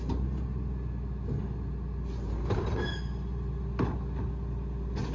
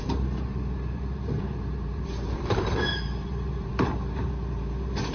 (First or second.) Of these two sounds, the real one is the first